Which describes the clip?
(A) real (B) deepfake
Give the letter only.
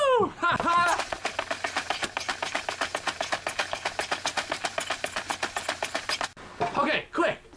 A